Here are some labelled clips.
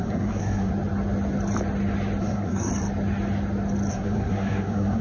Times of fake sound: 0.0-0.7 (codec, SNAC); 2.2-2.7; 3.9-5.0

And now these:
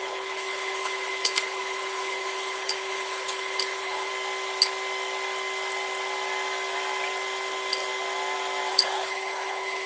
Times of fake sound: 0.0-4.1 (codec, HILCodec); 8.7-9.9

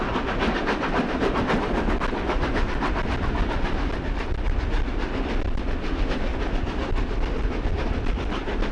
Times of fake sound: none

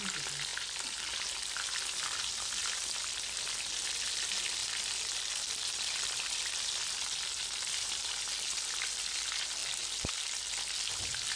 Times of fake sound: 0.5-3.4 (vocoder, BigVGAN v2); 4.6-8.1

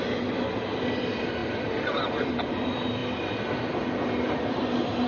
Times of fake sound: 1.4-2.5 (vocoder, BigVGAN v2)